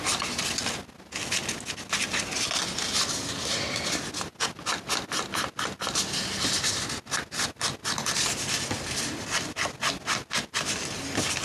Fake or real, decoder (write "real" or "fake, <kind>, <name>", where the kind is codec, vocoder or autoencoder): real